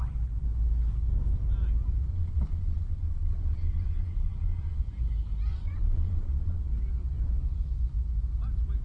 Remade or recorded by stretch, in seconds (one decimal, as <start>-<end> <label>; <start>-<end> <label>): 0.0-2.1 recorded; 2.1-4.8 remade; 4.8-5.5 recorded; 5.5-6.6 remade; 6.6-8.8 recorded